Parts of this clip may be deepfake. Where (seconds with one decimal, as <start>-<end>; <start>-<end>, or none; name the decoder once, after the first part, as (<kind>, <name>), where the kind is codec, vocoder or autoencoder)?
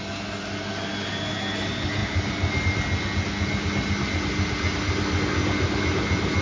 none